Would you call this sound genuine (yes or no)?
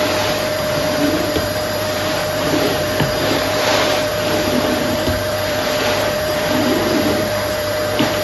no